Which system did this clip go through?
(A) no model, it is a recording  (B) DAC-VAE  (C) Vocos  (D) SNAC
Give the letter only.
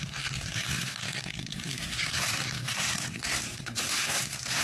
D